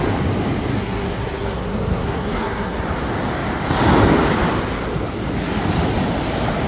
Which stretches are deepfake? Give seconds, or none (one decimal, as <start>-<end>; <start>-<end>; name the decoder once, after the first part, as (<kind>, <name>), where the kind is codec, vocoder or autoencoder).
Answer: 0.7-2.8 (codec, SNAC)